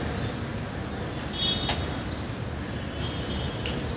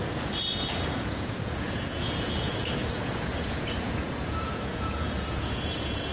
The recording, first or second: first